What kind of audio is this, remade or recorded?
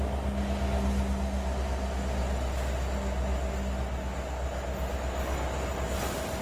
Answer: recorded